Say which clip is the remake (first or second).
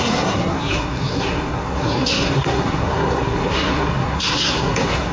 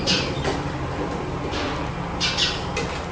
first